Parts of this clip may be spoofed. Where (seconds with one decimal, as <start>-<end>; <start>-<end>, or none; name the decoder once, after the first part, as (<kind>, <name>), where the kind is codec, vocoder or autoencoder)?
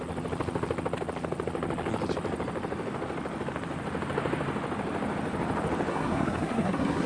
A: 5.9-7.1 (codec, SNAC)